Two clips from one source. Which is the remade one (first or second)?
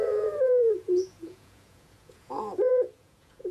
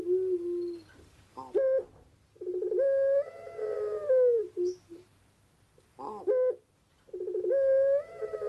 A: first